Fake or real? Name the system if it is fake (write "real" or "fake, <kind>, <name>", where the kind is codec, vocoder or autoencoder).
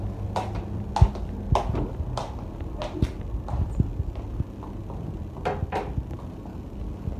real